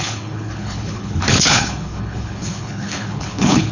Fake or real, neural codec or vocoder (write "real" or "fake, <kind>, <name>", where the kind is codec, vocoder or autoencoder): fake, codec, HILCodec